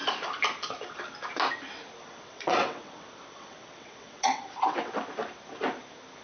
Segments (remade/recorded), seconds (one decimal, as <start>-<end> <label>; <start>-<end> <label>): 0.0-2.0 recorded; 2.0-4.9 remade; 4.9-6.2 recorded